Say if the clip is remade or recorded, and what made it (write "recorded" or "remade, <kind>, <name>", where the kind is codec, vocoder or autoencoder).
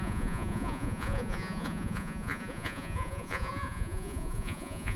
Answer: remade, vocoder, Vocos